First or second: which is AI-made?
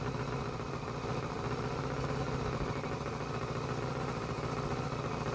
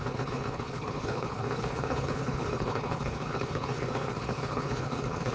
second